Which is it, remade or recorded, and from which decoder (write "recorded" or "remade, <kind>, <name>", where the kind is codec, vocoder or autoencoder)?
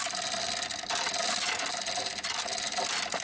recorded